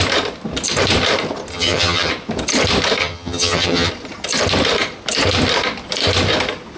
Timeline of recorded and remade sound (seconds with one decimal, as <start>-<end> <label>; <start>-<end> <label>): 0.0-1.5 recorded; 1.5-2.1 remade; 2.1-3.0 recorded; 3.0-3.9 remade; 3.9-6.8 recorded